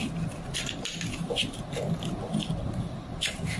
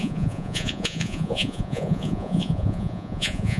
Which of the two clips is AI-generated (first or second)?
second